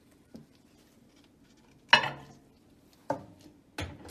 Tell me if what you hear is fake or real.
real